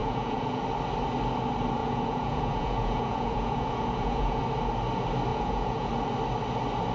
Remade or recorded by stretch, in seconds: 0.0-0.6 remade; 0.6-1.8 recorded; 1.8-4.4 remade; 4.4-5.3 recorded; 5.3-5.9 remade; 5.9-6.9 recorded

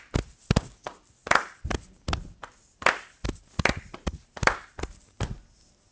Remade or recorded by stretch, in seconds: 0.0-1.2 recorded; 1.2-4.7 remade; 4.7-5.9 recorded

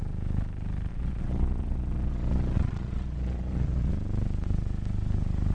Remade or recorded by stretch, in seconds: 0.0-0.9 recorded; 0.9-3.9 remade; 3.9-5.5 recorded

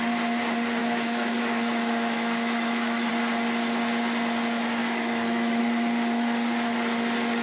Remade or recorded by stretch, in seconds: 0.0-0.8 recorded; 0.8-3.1 remade; 3.1-4.8 recorded; 4.8-5.6 remade; 5.6-7.4 recorded

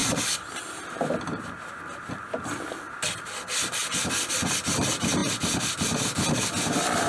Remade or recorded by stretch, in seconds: 0.0-7.1 recorded

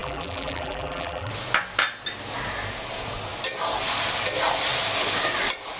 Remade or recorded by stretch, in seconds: 0.0-1.3 remade; 1.3-5.8 recorded

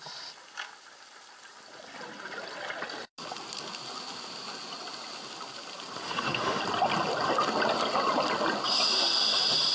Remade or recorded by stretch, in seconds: 0.0-6.0 recorded; 6.0-6.6 remade; 6.6-9.7 recorded